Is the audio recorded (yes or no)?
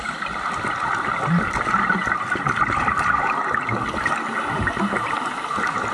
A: yes